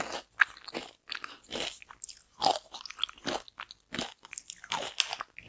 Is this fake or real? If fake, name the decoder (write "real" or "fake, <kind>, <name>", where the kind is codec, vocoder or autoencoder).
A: real